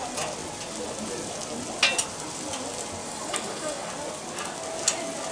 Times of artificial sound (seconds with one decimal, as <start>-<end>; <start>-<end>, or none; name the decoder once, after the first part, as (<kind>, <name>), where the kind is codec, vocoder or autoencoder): 3.0-3.9 (codec, DAC)